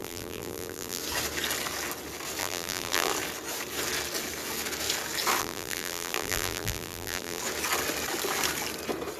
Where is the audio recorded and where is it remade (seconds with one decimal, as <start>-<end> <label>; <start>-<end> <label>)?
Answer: 0.0-1.0 remade; 1.0-2.4 recorded; 2.4-3.1 remade; 3.1-5.4 recorded; 5.4-7.4 remade; 7.4-9.2 recorded